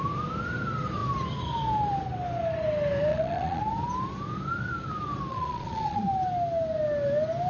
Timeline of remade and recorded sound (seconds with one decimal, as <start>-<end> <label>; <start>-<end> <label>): 0.0-3.1 recorded; 3.1-3.6 remade; 3.6-5.3 recorded; 5.3-6.0 remade; 6.0-7.5 recorded